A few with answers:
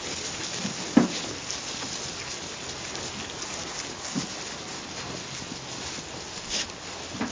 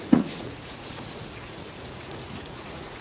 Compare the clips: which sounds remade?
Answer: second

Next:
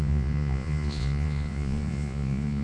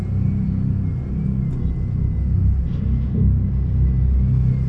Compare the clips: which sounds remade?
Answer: first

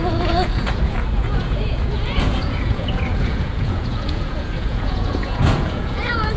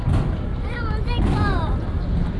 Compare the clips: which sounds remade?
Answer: first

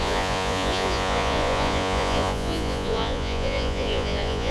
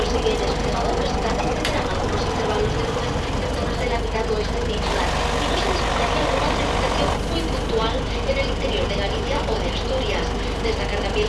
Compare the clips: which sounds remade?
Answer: first